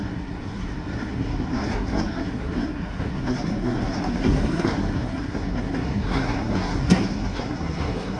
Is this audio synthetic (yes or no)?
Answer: yes